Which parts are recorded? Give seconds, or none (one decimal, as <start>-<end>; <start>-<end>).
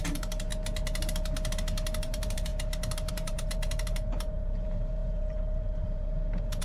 0.5-2.0; 2.5-3.1